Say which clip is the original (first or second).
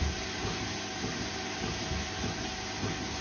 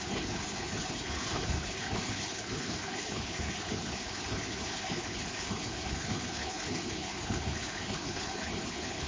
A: first